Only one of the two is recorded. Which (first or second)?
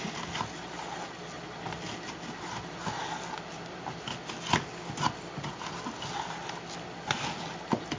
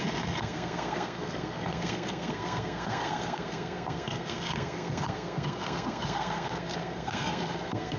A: first